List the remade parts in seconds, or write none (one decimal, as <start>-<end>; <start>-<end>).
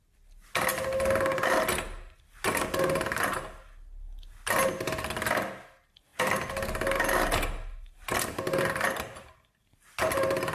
none